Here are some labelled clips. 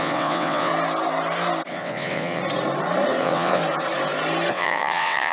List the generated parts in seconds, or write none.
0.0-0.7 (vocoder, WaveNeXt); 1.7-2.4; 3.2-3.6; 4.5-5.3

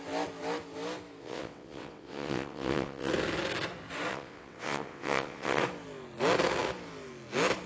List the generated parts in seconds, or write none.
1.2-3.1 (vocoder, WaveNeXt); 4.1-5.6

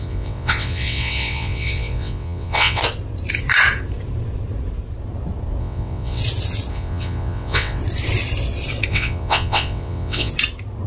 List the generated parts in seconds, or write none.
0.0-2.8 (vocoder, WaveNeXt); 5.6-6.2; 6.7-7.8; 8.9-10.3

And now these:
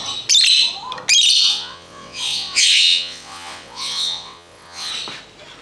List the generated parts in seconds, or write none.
1.5-4.9 (vocoder, WaveNeXt)

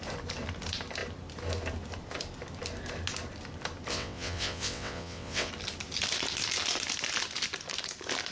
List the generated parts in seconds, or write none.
3.9-5.5 (vocoder, WaveNeXt)